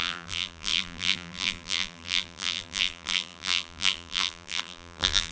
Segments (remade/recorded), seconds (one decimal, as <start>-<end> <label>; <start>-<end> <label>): 0.0-5.3 remade